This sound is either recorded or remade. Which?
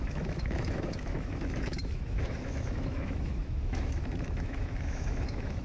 remade